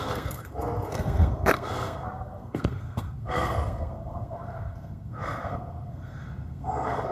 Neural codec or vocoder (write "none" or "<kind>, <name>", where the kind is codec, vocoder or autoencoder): codec, SNAC